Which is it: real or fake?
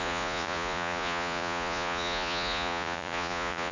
fake